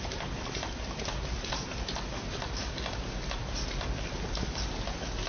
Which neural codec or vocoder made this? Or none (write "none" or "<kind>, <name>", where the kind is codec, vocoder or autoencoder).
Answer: none